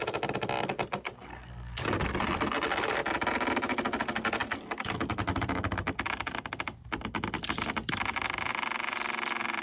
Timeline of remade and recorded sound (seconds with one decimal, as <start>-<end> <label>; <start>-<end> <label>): 0.0-9.6 recorded